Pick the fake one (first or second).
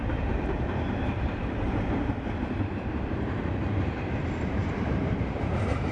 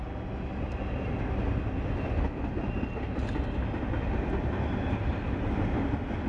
first